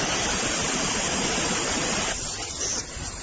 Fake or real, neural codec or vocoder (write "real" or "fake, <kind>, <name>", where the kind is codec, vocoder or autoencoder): real